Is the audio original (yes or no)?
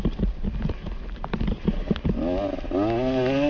yes